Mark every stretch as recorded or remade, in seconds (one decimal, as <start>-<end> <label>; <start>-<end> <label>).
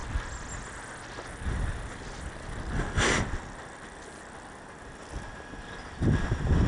0.0-6.7 recorded